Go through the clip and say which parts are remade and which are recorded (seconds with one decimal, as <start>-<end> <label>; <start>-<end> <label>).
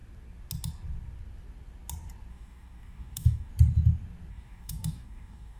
0.0-2.3 recorded; 2.3-3.5 remade; 3.5-4.3 recorded; 4.3-5.6 remade